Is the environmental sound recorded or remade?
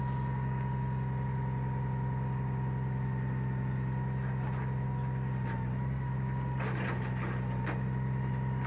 recorded